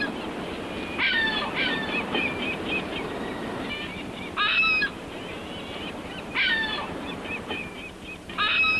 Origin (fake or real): fake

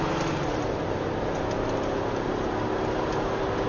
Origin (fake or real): real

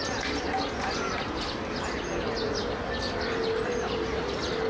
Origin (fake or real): real